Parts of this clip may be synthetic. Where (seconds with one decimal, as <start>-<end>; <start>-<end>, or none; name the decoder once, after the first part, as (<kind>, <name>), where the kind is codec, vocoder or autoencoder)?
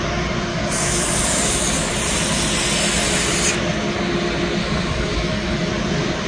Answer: 0.5-1.9 (codec, DAC); 4.6-5.7